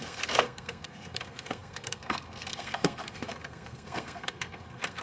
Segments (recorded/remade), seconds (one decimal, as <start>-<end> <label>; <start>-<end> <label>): 0.0-5.0 remade